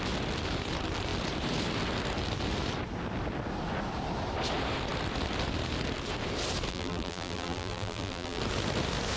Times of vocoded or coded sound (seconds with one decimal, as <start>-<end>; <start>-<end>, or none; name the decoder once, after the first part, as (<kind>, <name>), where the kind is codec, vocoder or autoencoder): 6.7-8.4 (vocoder, BigVGAN v2)